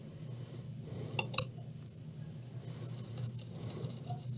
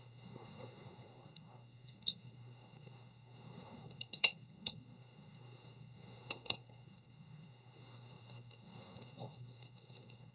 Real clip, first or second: first